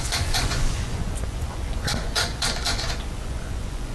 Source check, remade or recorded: remade